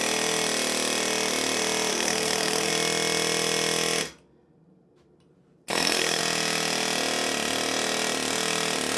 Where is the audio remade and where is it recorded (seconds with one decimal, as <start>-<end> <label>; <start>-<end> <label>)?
0.0-1.9 recorded; 1.9-2.7 remade; 2.7-5.7 recorded; 5.7-6.2 remade; 6.2-9.0 recorded